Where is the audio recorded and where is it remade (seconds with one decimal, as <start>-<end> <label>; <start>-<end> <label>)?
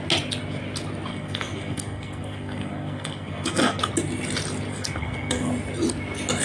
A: 0.0-1.1 recorded; 1.1-3.8 remade; 3.8-4.7 recorded; 4.7-5.5 remade; 5.5-6.4 recorded